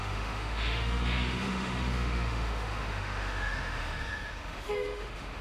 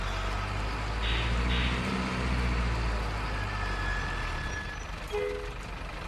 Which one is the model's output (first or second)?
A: first